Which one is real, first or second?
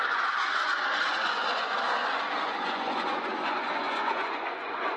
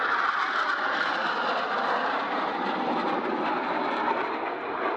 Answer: second